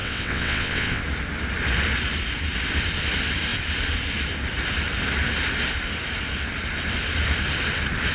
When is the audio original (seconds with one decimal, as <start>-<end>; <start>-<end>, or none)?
1.0-8.1